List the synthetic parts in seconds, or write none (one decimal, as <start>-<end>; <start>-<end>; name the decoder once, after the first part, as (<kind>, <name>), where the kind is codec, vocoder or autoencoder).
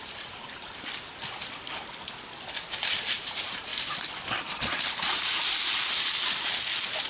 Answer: 0.0-1.4 (vocoder, BigVGAN v2); 2.8-3.7; 4.4-7.1